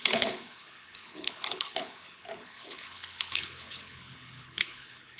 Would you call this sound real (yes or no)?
no